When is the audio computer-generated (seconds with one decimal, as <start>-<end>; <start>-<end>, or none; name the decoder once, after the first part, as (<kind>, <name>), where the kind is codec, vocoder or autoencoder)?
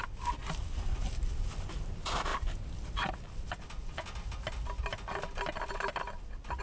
none